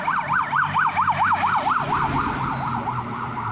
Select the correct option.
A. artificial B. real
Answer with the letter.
B